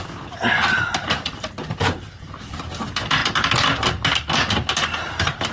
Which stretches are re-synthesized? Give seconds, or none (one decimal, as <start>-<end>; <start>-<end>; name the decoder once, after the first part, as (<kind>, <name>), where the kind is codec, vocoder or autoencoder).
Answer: 0.0-3.2 (vocoder, BigVGAN v2); 5.1-5.5